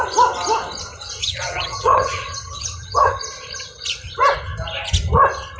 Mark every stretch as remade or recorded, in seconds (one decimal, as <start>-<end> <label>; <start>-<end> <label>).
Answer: 0.0-1.2 recorded; 1.2-3.2 remade; 3.2-5.6 recorded